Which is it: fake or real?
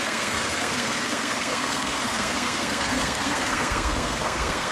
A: fake